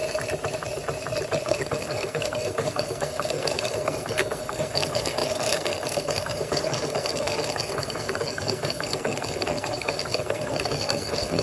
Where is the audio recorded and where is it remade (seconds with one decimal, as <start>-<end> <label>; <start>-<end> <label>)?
0.0-1.4 recorded; 1.4-11.4 remade